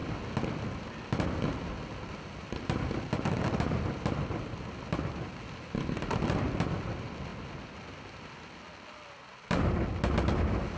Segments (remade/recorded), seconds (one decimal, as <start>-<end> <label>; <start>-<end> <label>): 0.0-10.8 recorded